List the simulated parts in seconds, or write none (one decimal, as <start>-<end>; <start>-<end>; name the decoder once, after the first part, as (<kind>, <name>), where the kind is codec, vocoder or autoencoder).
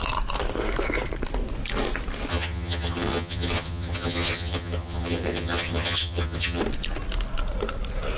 2.3-6.6 (vocoder, HiFi-GAN)